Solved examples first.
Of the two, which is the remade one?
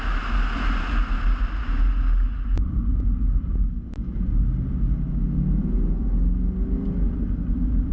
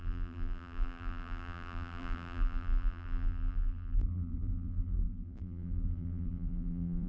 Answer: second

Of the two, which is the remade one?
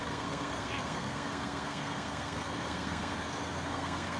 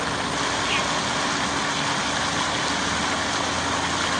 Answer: first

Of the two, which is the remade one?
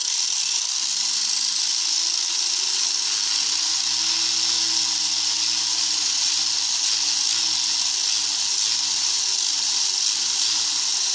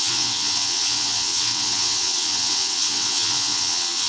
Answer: second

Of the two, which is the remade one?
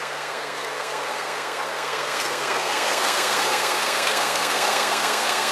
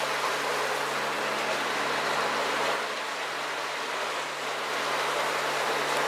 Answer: first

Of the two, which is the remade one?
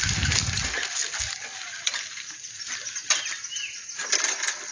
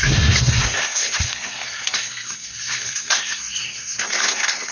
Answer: second